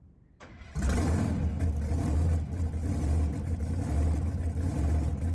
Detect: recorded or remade recorded